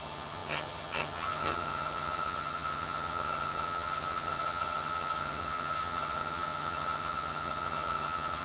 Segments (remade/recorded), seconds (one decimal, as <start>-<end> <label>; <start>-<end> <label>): 0.0-8.4 remade